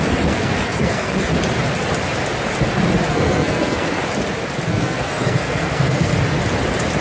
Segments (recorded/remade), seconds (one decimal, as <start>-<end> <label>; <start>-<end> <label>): 0.0-1.3 remade; 1.3-3.1 recorded; 3.1-4.0 remade; 4.0-4.7 recorded; 4.7-6.1 remade; 6.1-7.0 recorded